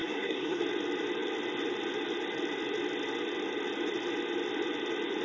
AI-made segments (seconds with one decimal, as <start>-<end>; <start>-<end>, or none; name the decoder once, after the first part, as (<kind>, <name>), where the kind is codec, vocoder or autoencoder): 0.0-0.6 (codec, SNAC)